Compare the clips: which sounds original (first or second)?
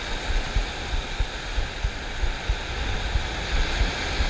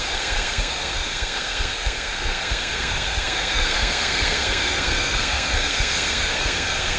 first